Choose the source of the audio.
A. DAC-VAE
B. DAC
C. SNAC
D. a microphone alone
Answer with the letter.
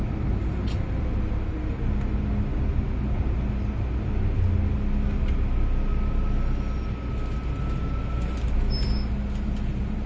D